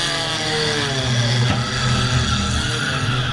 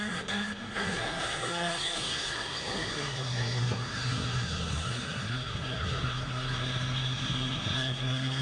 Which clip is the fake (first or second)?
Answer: second